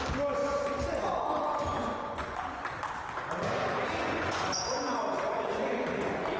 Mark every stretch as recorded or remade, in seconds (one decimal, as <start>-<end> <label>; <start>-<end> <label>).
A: 0.0-0.4 recorded; 0.4-2.6 remade; 2.6-4.0 recorded; 4.0-6.4 remade